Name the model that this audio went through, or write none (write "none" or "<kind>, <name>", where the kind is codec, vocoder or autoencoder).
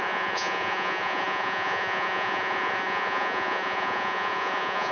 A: vocoder, Vocos